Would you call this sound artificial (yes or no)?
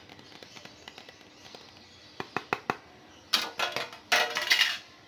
no